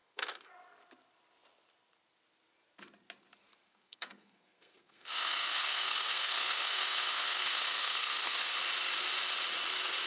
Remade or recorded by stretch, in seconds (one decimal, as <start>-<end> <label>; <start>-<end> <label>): 0.0-0.5 remade; 0.5-3.7 recorded; 3.7-8.5 remade; 8.5-10.1 recorded